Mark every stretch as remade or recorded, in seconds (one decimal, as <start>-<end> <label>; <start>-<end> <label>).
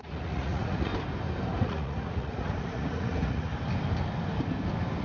0.0-0.9 remade; 0.9-1.6 recorded; 1.6-3.5 remade; 3.5-5.0 recorded